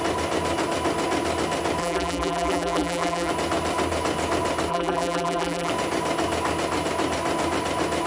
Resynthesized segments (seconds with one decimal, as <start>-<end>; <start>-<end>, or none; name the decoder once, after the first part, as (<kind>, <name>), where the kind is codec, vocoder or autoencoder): 1.8-3.3 (vocoder, BigVGAN v2); 4.7-5.7